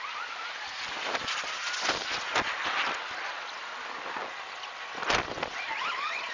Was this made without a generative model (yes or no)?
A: yes